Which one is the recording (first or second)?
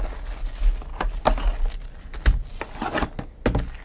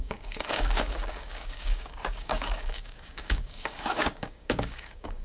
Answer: first